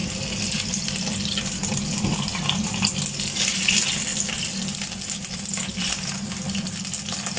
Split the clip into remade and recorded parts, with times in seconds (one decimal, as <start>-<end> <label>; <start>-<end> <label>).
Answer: 0.0-7.4 recorded

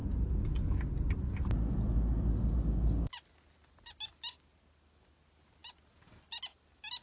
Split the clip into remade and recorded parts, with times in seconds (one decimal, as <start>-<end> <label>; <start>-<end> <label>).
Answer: 0.0-2.3 recorded; 2.3-3.1 remade; 3.1-7.0 recorded

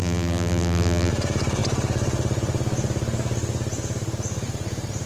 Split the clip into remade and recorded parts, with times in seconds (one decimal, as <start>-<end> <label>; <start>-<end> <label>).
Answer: 0.0-1.1 remade; 1.1-5.1 recorded

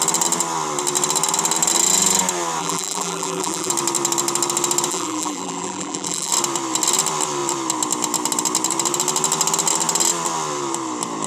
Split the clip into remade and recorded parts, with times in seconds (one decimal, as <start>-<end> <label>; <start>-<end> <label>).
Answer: 0.0-2.6 recorded; 2.6-3.7 remade; 3.7-4.9 recorded; 4.9-6.3 remade; 6.3-11.3 recorded